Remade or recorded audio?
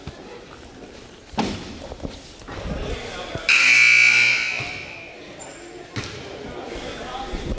recorded